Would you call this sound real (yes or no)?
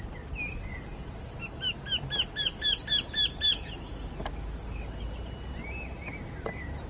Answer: yes